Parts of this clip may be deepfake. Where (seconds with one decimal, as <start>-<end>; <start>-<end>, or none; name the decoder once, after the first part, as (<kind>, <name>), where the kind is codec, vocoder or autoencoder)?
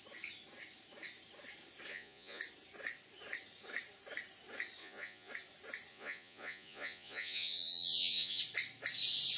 1.9-2.4 (vocoder, Vocos); 4.8-5.3; 5.9-8.4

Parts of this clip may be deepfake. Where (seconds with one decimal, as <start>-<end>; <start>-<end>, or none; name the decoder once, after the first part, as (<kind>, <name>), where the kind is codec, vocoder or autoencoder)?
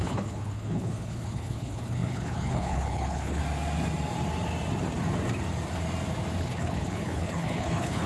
0.0-3.4 (codec, HILCodec); 6.4-8.1